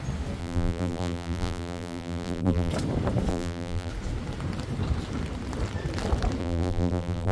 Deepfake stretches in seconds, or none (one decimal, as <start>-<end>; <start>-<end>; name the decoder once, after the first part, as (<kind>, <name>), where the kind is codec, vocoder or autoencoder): 0.4-2.7 (vocoder, BigVGAN v2); 3.3-3.9; 6.4-7.3